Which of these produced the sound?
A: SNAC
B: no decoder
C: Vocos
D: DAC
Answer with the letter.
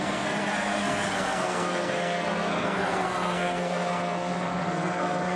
A